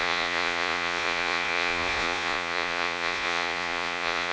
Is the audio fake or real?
fake